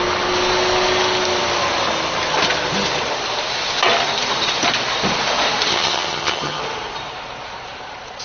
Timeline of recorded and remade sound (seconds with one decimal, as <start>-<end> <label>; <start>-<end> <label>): 0.0-5.7 recorded; 5.7-6.6 remade; 6.6-8.2 recorded